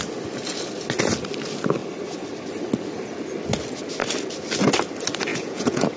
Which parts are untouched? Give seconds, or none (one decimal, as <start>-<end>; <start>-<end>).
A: 0.0-5.3